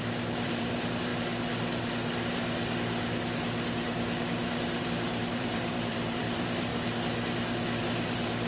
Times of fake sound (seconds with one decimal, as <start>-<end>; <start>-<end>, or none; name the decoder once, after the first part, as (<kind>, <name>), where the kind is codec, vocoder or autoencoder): 0.0-1.1 (vocoder, BigVGAN v2); 4.8-6.7; 7.8-8.5